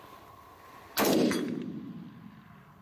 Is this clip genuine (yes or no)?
yes